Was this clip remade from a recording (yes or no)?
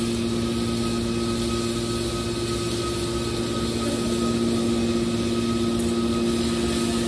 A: no